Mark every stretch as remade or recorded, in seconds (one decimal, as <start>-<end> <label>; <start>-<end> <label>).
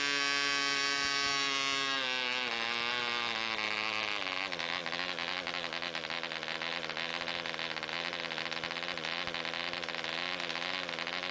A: 0.0-11.3 recorded